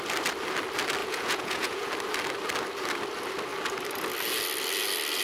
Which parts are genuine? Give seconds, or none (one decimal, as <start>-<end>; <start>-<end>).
0.0-1.0; 1.9-5.2